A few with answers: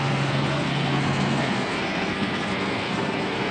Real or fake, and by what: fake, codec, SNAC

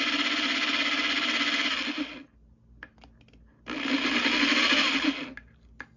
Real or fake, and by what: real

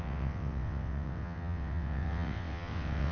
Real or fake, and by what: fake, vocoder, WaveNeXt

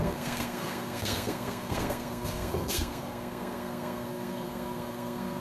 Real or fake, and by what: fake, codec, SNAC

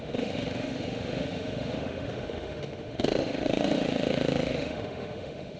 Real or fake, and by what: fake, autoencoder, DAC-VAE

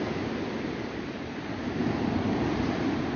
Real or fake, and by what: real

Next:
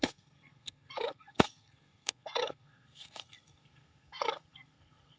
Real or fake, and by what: fake, codec, SNAC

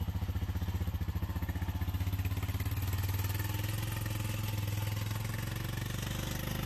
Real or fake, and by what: real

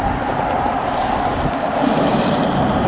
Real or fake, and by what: fake, vocoder, BigVGAN v2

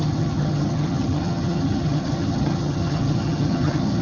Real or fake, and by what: fake, vocoder, HiFi-GAN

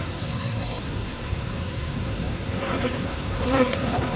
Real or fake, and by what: fake, codec, SNAC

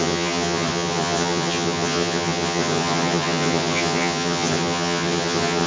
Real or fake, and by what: fake, vocoder, HiFi-GAN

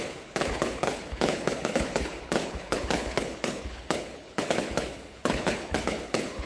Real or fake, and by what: fake, codec, HILCodec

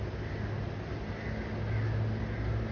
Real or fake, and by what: real